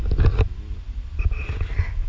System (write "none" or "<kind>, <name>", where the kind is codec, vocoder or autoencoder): none